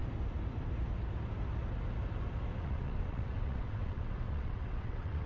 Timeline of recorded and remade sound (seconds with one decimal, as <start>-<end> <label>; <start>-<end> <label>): 0.0-2.6 recorded; 2.6-5.3 remade